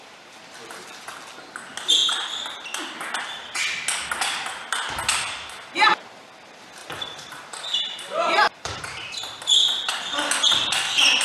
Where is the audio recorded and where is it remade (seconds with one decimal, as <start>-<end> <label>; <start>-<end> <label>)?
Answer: 0.0-1.2 remade; 1.2-6.8 recorded; 6.8-8.8 remade; 8.8-11.2 recorded